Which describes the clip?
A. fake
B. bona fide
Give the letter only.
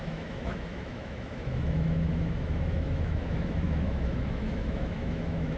A